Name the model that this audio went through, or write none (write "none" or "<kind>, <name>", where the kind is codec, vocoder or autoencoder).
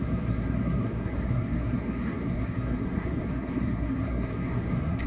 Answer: codec, SNAC